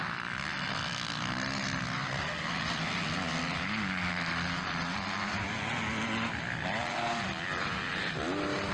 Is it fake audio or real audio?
real